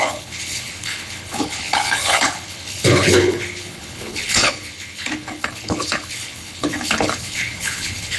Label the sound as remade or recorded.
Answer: remade